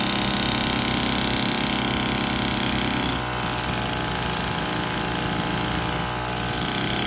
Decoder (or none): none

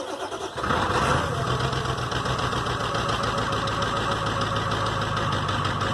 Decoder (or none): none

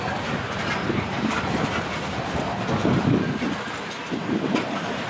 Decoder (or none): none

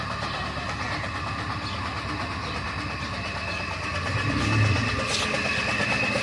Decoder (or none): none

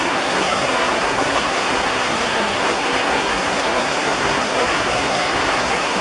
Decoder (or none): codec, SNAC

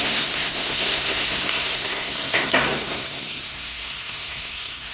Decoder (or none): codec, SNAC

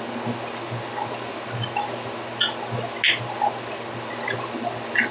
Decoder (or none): none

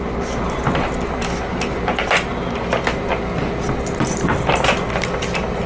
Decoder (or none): none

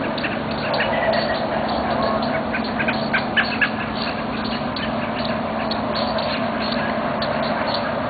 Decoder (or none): none